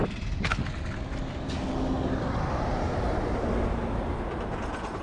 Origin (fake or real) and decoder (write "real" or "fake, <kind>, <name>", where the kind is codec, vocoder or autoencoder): real